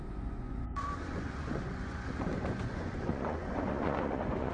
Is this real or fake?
fake